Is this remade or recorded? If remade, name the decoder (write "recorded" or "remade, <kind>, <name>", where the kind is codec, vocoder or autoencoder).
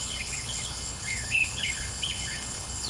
remade, codec, HILCodec